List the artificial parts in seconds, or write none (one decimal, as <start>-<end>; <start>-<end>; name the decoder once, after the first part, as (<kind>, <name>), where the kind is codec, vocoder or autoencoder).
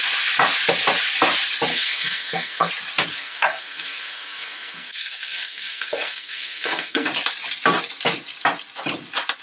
1.7-2.7 (codec, SNAC); 3.1-7.1